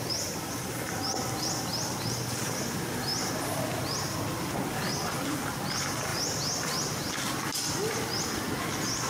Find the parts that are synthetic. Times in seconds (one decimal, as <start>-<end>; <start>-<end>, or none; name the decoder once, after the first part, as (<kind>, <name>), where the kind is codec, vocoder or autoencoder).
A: 3.1-4.2 (vocoder, BigVGAN v2); 6.1-7.1